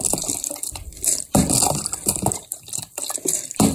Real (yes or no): no